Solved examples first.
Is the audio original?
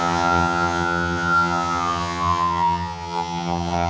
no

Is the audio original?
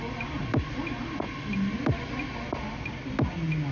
yes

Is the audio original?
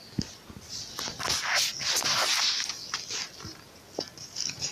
yes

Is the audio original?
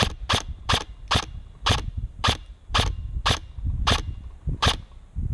yes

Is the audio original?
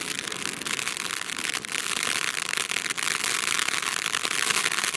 no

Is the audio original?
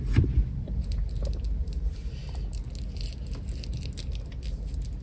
yes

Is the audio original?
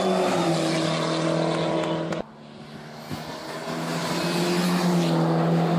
yes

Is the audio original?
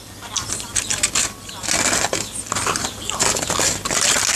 yes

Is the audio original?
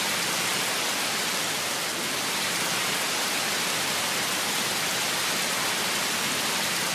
yes